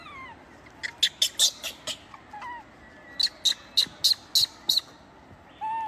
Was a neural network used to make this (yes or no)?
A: no